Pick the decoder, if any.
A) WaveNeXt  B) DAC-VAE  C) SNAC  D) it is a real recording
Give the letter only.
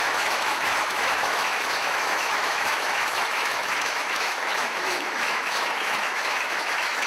B